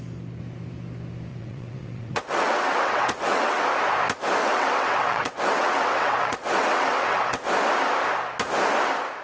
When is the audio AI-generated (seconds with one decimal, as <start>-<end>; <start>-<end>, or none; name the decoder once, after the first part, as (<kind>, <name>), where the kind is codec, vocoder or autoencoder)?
1.3-3.6 (vocoder, WaveNeXt); 4.4-7.5